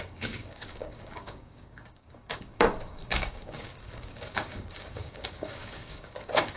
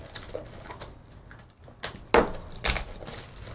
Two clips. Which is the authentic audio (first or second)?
second